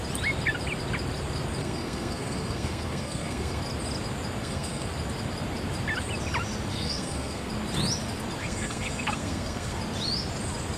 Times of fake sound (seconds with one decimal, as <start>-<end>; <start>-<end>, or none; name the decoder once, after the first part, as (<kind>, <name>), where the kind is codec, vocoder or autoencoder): 1.6-3.6 (codec, SNAC); 4.4-4.9; 6.7-7.5; 8.4-9.8